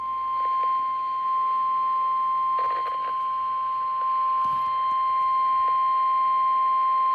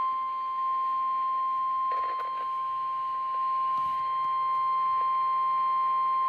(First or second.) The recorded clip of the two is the first